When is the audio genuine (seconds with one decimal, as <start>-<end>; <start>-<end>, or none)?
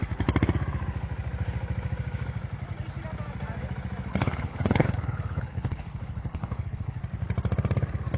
0.0-4.1; 7.0-8.2